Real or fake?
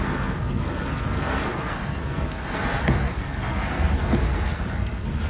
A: fake